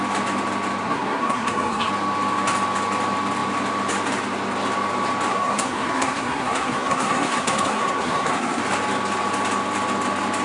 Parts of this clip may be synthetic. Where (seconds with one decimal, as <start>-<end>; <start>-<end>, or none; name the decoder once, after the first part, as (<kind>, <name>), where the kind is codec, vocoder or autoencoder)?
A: 0.8-1.9 (codec, SNAC); 5.3-8.6